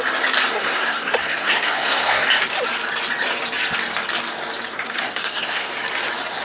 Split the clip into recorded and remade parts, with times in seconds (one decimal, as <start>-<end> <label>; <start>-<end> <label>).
0.0-0.5 recorded; 0.5-2.2 remade; 2.2-4.7 recorded; 4.7-5.7 remade; 5.7-6.4 recorded